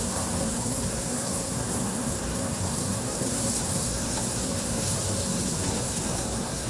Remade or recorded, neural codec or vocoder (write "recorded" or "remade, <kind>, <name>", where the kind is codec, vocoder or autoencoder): remade, codec, SNAC